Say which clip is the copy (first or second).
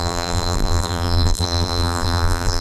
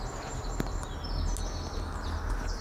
first